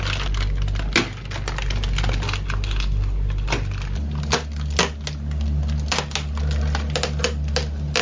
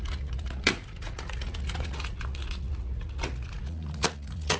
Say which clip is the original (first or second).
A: first